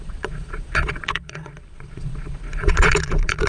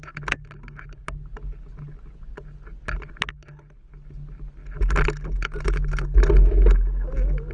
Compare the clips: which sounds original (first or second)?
second